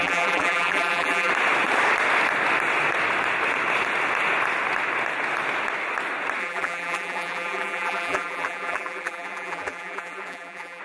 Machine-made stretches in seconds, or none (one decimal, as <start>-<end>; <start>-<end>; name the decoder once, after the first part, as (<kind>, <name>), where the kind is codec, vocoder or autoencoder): 0.0-1.3 (vocoder, BigVGAN v2); 6.4-10.8